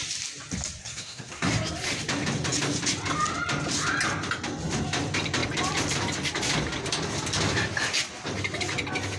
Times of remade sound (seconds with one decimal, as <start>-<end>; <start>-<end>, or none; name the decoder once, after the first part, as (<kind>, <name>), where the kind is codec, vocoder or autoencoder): 0.8-1.5 (codec, SNAC)